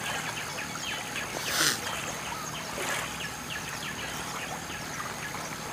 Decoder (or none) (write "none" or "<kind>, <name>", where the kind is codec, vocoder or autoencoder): none